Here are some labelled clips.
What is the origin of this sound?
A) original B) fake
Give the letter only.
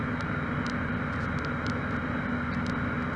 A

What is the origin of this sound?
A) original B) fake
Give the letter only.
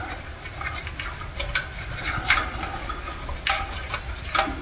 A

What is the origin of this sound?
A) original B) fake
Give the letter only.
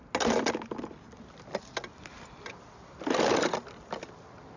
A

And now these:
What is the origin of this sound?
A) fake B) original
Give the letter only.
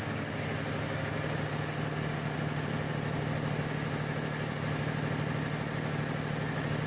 B